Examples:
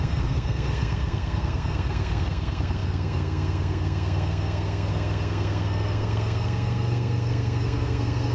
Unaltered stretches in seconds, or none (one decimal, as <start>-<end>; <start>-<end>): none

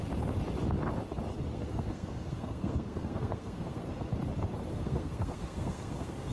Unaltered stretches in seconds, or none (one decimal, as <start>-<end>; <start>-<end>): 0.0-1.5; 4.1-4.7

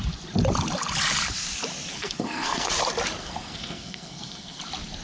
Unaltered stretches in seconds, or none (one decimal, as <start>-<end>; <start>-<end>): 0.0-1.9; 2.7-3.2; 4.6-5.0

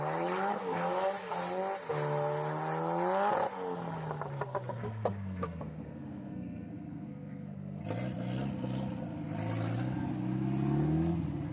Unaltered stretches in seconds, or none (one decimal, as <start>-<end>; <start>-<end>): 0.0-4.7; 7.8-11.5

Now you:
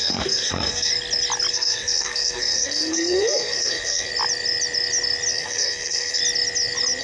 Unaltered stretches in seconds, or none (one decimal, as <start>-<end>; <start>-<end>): 0.9-1.5; 4.1-5.3; 6.2-7.0